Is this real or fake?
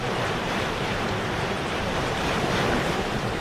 fake